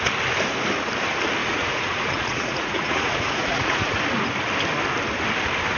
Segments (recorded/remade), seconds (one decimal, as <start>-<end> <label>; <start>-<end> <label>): 0.0-1.4 recorded; 1.4-4.0 remade; 4.0-5.8 recorded